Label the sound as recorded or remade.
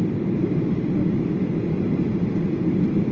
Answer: recorded